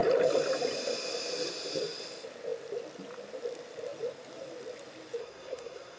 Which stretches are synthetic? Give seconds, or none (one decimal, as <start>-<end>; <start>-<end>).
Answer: 5.2-6.0